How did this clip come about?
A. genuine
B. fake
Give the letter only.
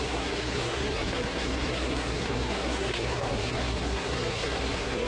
B